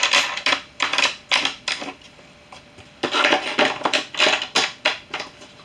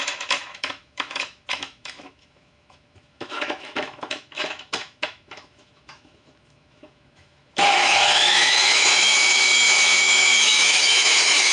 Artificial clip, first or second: second